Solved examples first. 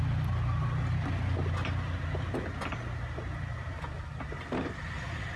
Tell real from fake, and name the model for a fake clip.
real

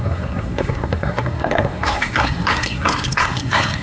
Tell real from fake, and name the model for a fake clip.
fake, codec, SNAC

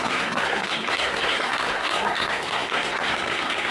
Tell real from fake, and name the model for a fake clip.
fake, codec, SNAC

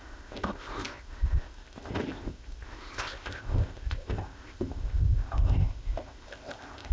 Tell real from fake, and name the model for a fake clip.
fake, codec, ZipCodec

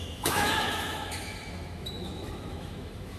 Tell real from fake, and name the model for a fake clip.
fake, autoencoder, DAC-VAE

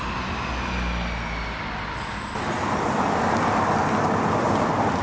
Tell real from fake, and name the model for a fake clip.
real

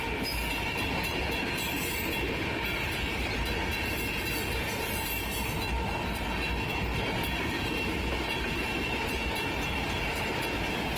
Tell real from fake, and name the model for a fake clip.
real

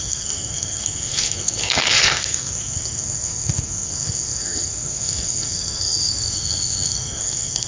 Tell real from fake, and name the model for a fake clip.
fake, codec, SNAC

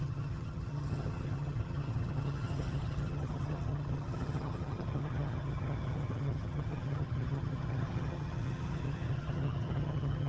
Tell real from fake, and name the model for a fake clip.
fake, vocoder, HiFi-GAN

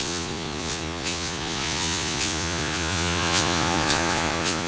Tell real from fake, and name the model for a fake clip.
fake, vocoder, Vocos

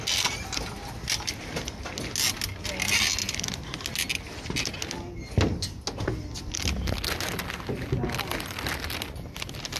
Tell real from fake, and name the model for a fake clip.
real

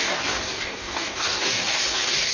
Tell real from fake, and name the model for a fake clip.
fake, codec, DAC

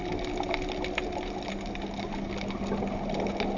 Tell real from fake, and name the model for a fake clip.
real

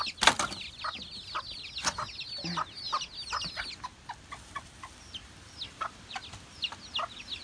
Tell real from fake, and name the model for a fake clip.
real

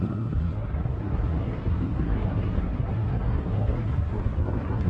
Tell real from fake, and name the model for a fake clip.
fake, codec, SNAC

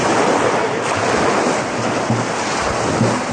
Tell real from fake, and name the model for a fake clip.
real